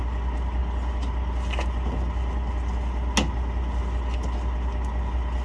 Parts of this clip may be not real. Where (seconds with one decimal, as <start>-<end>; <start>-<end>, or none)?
none